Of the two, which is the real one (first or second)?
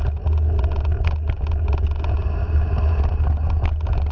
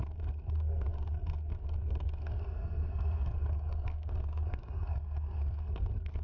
first